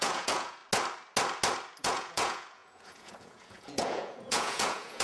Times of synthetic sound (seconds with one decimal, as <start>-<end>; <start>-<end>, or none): 0.0-0.6; 1.8-5.0